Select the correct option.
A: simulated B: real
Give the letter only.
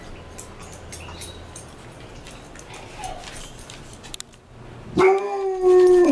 B